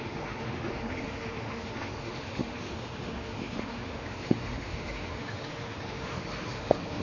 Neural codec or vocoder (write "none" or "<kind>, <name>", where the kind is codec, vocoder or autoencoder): autoencoder, DAC-VAE